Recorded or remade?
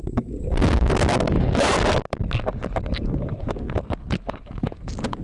remade